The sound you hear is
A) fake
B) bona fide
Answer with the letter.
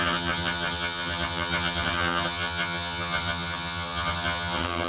A